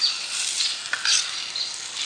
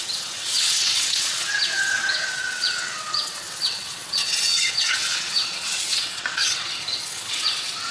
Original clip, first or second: first